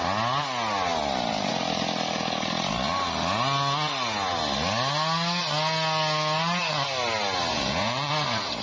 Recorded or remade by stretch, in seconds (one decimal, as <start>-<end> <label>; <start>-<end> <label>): 0.0-7.5 recorded; 7.5-8.1 remade; 8.1-8.6 recorded